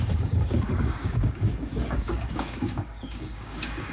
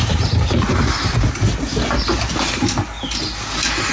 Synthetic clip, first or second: first